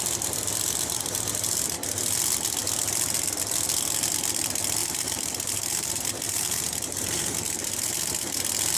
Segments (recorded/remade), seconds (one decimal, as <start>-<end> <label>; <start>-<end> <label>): 0.0-4.8 recorded; 4.8-8.4 remade; 8.4-8.8 recorded